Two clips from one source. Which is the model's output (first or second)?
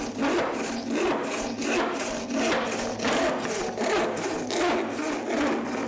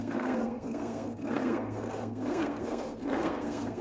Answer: second